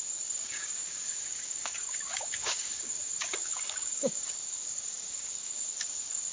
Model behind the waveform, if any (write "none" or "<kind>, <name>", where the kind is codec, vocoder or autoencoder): codec, DAC